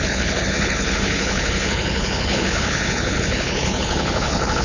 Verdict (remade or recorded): remade